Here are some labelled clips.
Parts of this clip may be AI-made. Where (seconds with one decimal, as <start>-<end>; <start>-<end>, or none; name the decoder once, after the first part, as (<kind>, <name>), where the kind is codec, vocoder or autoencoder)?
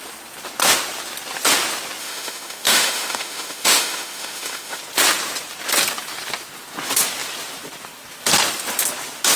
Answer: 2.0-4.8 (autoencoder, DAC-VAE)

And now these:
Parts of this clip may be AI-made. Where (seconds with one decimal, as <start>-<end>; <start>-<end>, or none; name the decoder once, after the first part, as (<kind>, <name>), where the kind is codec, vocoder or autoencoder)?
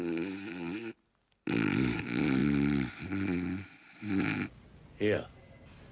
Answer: none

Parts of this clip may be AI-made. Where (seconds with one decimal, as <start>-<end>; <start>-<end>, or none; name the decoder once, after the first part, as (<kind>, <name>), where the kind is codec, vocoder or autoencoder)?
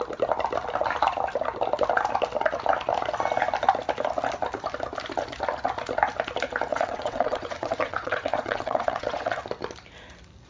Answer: 6.7-9.4 (vocoder, WaveNeXt)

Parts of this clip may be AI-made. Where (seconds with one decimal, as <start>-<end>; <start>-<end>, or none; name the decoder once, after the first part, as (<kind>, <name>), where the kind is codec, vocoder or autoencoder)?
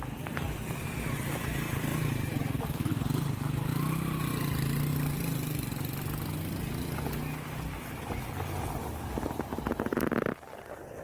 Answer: 1.9-2.9 (vocoder, BigVGAN v2)